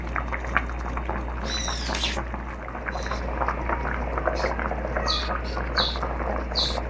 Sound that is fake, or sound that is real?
real